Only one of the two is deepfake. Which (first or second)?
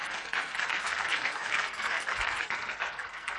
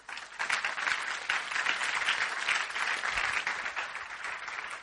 first